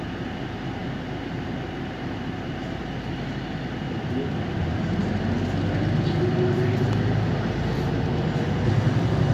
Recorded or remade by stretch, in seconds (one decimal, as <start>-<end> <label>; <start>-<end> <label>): 0.0-9.3 recorded